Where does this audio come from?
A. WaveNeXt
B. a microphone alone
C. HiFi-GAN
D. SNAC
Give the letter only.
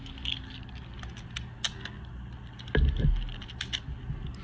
B